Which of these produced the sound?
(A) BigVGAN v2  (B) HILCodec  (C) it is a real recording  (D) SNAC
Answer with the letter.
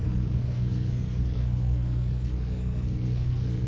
D